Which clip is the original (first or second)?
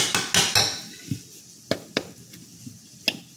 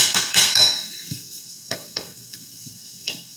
first